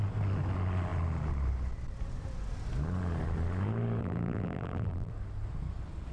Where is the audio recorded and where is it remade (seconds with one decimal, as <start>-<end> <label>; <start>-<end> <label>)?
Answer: 0.0-4.0 recorded; 4.0-5.1 remade; 5.1-6.1 recorded